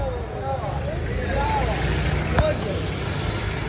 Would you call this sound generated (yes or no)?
no